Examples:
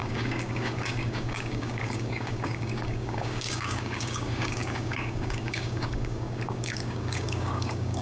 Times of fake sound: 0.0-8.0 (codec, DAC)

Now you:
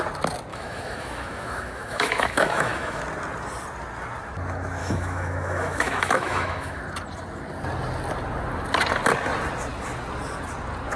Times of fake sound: 0.5-3.0 (autoencoder, DAC-VAE); 4.8-6.8

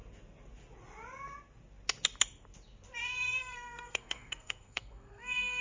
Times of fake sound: 3.4-5.6 (codec, SNAC)

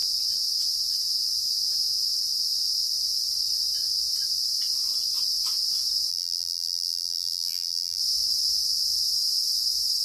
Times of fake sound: 6.1-8.0 (vocoder, BigVGAN v2)

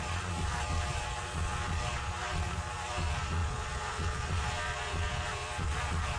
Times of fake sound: 0.0-6.2 (vocoder, Vocos)

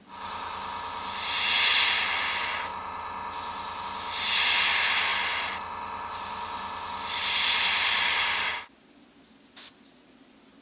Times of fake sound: none

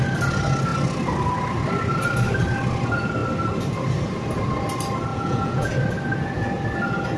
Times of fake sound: 5.1-5.7 (vocoder, Vocos)